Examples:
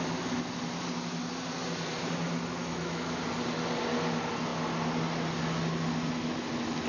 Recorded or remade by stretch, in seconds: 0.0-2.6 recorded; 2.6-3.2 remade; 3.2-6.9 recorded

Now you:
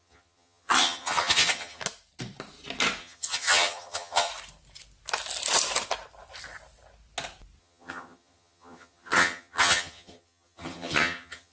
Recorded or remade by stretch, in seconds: 0.0-1.8 remade; 1.8-3.0 recorded; 3.0-4.3 remade; 4.3-7.6 recorded; 7.6-11.5 remade

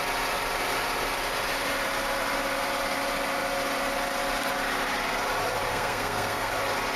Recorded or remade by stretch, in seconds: 0.0-5.7 recorded; 5.7-6.5 remade; 6.5-7.0 recorded

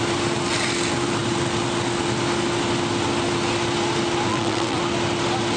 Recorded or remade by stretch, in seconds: 0.0-4.3 recorded; 4.3-4.8 remade; 4.8-5.6 recorded

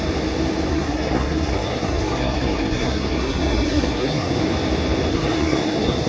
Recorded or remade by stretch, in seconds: 0.0-0.7 recorded; 0.7-4.4 remade; 4.4-5.1 recorded; 5.1-6.1 remade